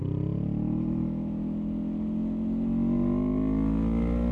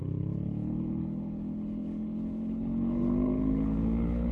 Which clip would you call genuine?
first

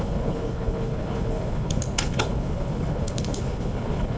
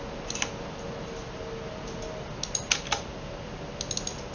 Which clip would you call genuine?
second